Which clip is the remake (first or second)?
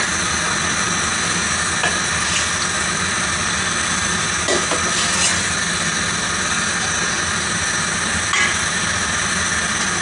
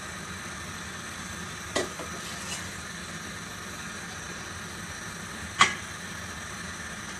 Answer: second